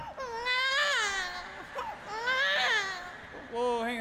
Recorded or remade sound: recorded